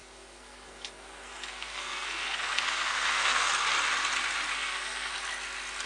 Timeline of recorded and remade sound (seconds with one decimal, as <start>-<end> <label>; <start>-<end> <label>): 0.0-3.5 remade; 3.5-4.5 recorded; 4.5-5.1 remade; 5.1-5.9 recorded